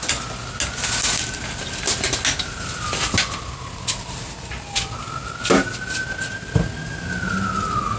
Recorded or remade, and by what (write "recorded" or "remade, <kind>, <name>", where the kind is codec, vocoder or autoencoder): recorded